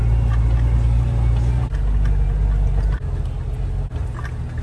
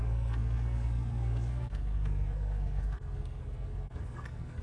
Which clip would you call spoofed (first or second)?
second